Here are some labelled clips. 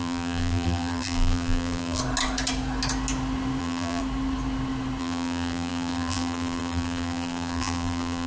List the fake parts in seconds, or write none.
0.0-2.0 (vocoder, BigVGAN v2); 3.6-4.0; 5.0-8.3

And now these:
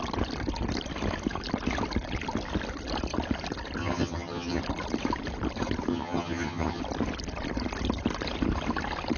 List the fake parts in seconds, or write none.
3.8-4.6 (vocoder, HiFi-GAN); 5.9-6.8

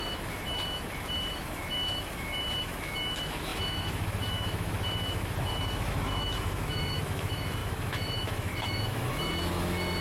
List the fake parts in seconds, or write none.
0.0-10.0 (autoencoder, DAC-VAE)

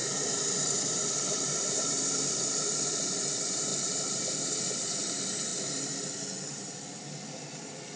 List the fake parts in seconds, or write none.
0.0-3.0 (vocoder, BigVGAN v2); 5.5-7.0

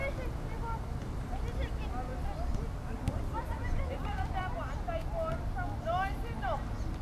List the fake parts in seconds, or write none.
none

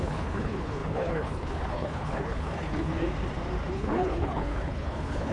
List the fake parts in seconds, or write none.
0.0-2.9 (codec, HILCodec); 3.7-5.3